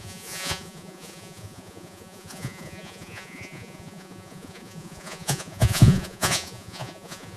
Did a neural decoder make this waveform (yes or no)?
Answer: yes